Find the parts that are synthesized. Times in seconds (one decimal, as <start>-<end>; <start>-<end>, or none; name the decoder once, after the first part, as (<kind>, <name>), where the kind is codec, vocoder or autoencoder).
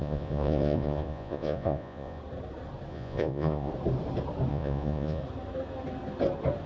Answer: 0.0-2.2 (vocoder, Vocos); 2.9-3.7; 4.5-5.2